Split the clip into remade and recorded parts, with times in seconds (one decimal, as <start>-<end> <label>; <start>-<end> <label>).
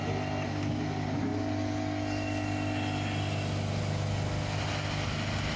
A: 0.0-5.6 recorded